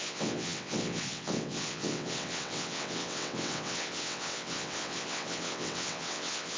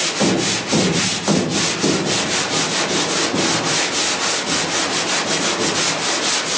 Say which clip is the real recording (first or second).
second